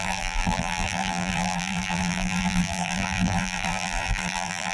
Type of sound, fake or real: fake